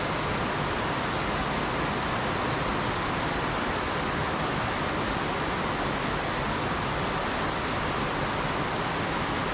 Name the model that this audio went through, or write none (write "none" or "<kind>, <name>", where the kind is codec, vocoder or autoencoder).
none